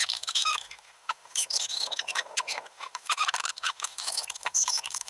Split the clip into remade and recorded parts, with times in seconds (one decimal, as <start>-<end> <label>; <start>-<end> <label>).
0.0-5.1 remade